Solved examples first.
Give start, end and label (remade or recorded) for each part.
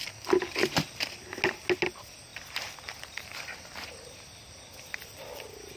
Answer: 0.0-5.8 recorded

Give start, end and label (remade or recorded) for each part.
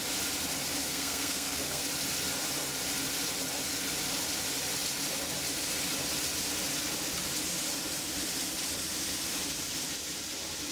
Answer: 0.0-0.8 recorded; 0.8-1.8 remade; 1.8-10.7 recorded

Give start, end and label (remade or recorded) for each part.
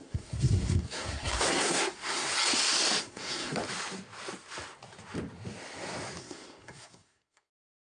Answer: 0.0-2.3 remade; 2.3-3.0 recorded; 3.0-3.6 remade; 3.6-6.2 recorded; 6.2-7.8 remade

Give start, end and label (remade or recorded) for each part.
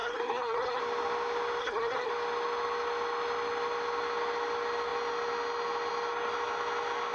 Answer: 0.0-0.8 remade; 0.8-1.6 recorded; 1.6-2.1 remade; 2.1-7.1 recorded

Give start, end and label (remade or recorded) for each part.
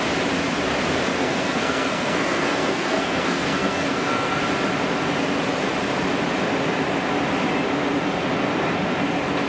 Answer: 0.0-1.2 recorded; 1.2-4.4 remade; 4.4-9.5 recorded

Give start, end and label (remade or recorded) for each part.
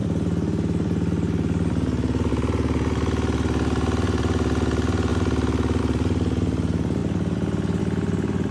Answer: 0.0-8.5 recorded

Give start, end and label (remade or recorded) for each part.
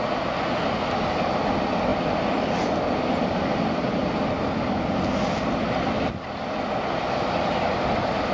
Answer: 0.0-8.3 recorded